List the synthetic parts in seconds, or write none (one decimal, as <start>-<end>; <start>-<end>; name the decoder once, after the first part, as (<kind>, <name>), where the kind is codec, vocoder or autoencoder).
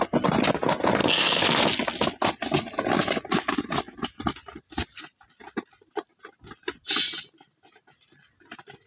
none